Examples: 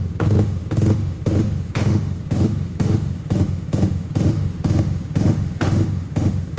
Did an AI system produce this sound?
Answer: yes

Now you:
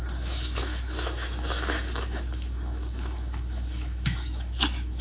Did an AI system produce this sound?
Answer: yes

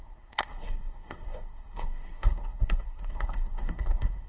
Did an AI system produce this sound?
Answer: yes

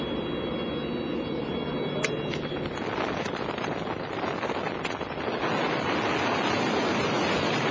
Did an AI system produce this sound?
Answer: no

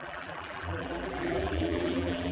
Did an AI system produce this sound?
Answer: yes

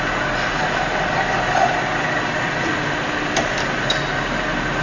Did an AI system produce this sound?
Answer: no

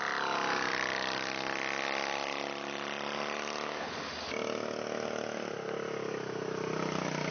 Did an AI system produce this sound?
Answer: no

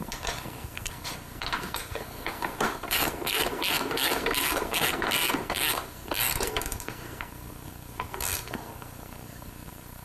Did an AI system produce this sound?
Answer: yes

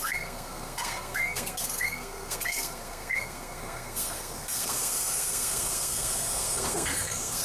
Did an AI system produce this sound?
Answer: yes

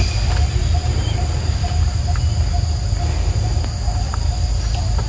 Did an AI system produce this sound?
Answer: no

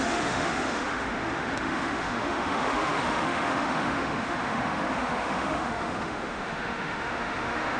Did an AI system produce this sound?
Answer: yes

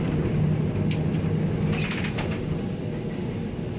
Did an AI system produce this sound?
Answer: no